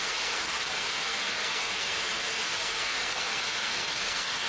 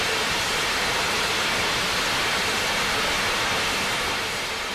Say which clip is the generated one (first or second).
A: first